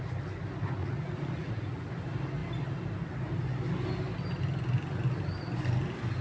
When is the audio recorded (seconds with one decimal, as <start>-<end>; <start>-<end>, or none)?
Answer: 0.0-0.8; 1.5-6.2